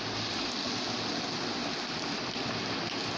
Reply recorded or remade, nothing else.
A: recorded